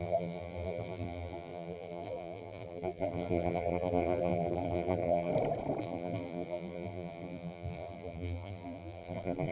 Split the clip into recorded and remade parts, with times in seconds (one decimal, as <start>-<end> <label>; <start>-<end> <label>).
0.0-5.3 remade; 5.3-5.8 recorded; 5.8-9.5 remade